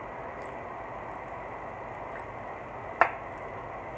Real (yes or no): yes